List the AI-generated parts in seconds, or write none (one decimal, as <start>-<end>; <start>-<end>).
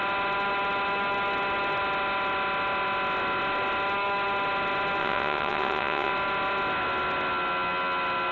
5.0-6.1